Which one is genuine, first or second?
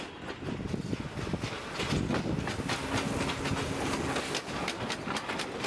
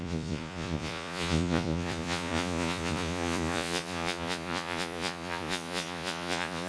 first